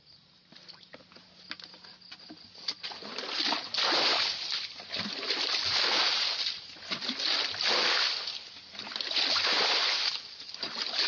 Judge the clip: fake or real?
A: real